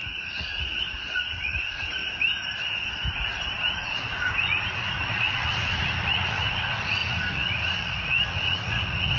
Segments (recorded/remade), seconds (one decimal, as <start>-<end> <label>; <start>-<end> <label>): 0.0-2.0 remade; 2.0-3.7 recorded; 3.7-9.2 remade